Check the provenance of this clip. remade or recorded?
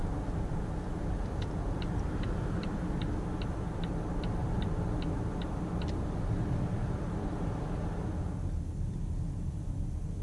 recorded